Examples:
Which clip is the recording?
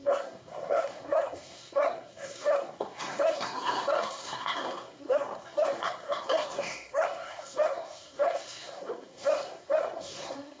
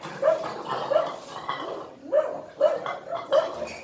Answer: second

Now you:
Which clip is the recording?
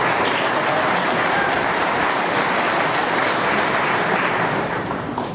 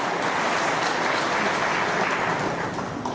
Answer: second